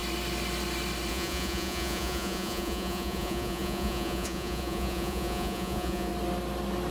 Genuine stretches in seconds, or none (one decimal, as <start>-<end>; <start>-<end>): 0.0-1.1; 6.1-6.9